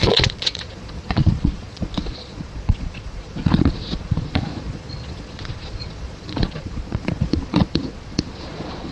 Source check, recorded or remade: remade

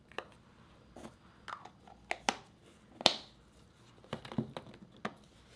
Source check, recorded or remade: recorded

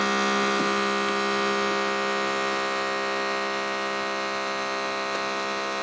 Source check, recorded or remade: recorded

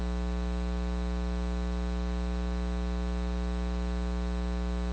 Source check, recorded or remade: recorded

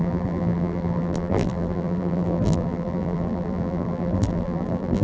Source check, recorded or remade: remade